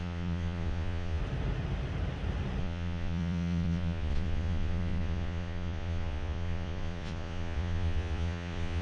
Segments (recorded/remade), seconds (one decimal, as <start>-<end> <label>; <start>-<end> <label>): 0.0-1.2 remade; 1.2-2.6 recorded; 2.6-8.8 remade